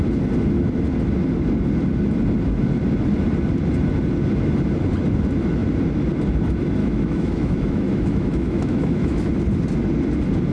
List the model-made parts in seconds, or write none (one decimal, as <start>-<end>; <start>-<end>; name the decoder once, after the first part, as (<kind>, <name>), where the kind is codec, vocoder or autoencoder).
6.8-9.2 (autoencoder, DAC-VAE)